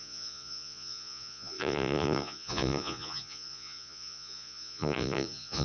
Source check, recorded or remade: remade